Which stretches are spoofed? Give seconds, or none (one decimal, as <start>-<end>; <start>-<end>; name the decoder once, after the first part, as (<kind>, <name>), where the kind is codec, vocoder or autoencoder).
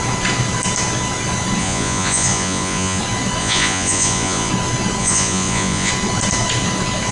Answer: 1.6-3.0 (vocoder, Vocos); 3.4-4.5; 5.0-5.9